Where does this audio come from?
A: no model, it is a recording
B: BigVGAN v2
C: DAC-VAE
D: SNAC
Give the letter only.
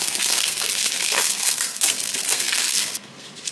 D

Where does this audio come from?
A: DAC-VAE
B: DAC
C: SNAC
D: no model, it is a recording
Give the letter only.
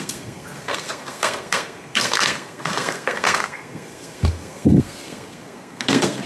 C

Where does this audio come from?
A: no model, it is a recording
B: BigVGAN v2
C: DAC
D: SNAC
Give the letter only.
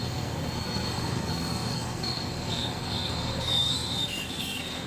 D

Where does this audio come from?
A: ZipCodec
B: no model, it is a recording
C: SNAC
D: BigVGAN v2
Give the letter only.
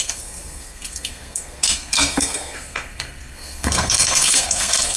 C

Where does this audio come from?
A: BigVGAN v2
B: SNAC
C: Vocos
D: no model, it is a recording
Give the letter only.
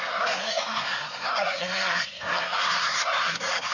B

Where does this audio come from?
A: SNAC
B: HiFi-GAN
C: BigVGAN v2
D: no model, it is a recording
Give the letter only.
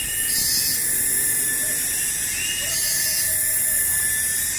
D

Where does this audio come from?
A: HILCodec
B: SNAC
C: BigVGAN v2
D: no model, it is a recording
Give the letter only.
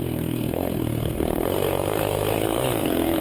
B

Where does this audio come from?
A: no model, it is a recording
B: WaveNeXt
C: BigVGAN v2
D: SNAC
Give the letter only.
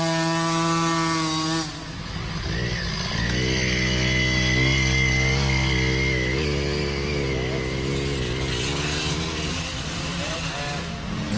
A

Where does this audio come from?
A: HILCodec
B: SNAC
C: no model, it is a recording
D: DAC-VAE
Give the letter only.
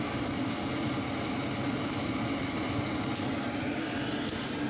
C